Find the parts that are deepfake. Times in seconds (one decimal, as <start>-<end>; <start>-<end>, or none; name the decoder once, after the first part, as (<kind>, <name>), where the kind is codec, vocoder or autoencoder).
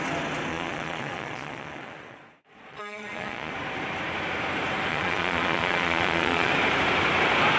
0.5-3.5 (vocoder, Vocos); 4.9-6.5